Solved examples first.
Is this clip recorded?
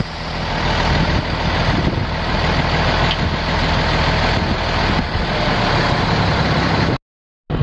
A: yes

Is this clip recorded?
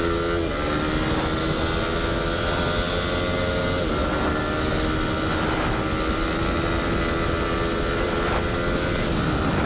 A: yes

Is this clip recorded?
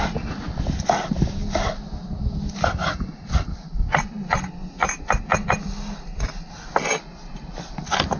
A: yes